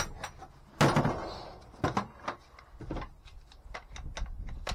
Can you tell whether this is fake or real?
real